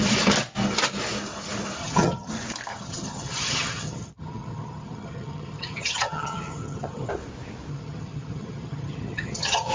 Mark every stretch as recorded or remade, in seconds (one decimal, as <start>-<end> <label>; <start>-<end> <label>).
0.0-1.8 recorded; 1.8-2.3 remade; 2.3-2.7 recorded; 2.7-7.1 remade; 7.1-7.7 recorded; 7.7-9.7 remade